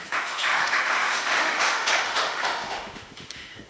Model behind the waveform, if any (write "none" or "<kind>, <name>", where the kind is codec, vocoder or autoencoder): autoencoder, DAC-VAE